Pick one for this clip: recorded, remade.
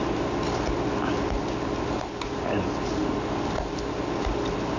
recorded